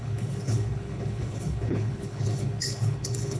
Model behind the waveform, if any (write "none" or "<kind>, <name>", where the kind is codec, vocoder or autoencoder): codec, HILCodec